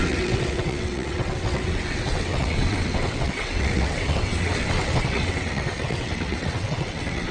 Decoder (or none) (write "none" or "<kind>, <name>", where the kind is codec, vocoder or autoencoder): vocoder, WaveNeXt